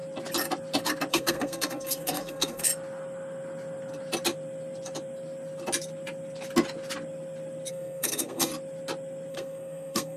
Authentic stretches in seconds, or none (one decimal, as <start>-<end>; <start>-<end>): 0.0-1.1; 2.7-7.7; 8.5-9.3